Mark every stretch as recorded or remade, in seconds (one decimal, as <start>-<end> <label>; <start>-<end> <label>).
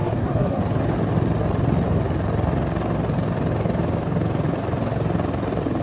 0.0-0.6 remade; 0.6-5.8 recorded